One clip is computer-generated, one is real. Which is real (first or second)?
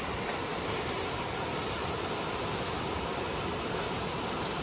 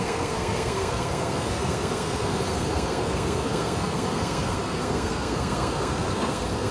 first